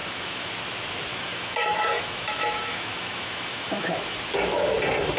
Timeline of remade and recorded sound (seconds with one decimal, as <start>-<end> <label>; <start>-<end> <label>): 0.0-0.5 remade; 0.5-1.1 recorded; 1.1-4.2 remade; 4.2-5.2 recorded